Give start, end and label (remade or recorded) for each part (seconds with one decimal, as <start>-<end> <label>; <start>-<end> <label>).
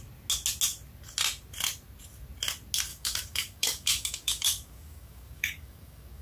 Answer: 0.0-2.9 recorded; 2.9-6.2 remade